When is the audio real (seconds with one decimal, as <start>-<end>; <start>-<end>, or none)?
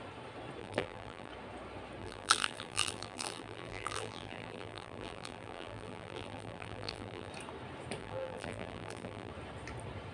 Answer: 0.0-0.6; 1.3-2.0; 7.3-8.0; 9.3-10.1